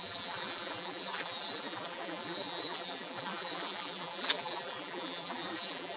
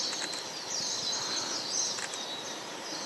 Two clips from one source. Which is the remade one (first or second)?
first